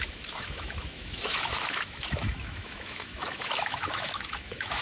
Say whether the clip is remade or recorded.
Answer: remade